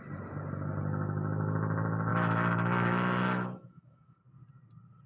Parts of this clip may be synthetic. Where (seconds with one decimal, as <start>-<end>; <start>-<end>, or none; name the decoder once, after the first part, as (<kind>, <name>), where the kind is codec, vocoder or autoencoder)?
2.1-4.2 (autoencoder, DAC-VAE)